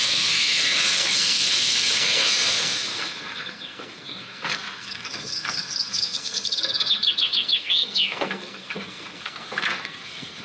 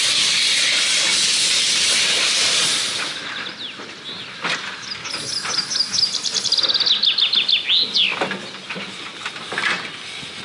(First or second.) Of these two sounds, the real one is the second